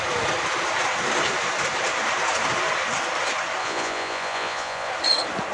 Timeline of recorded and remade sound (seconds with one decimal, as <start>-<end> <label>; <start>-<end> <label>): 0.0-3.6 recorded; 3.6-4.9 remade; 4.9-5.5 recorded